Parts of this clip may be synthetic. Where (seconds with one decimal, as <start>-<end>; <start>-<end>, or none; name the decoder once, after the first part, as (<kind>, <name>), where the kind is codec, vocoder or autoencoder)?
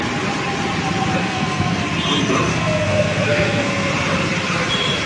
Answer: 1.2-1.8 (codec, SNAC); 2.5-3.9